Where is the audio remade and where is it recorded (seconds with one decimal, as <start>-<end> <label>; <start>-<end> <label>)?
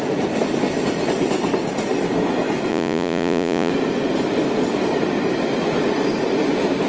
0.0-2.7 recorded; 2.7-3.7 remade; 3.7-6.9 recorded